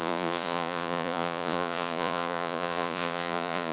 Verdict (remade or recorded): remade